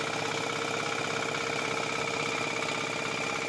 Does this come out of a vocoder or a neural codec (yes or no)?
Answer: no